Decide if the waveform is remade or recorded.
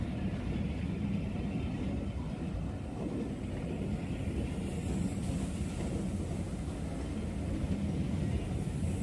recorded